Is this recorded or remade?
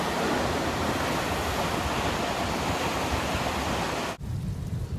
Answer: recorded